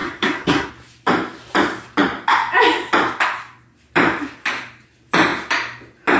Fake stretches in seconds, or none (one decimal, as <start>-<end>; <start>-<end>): 0.0-0.7